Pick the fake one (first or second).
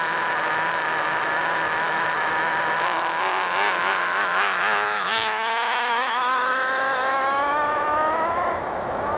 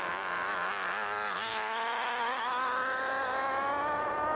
first